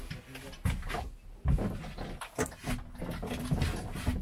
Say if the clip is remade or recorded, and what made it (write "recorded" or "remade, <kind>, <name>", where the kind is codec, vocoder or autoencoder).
recorded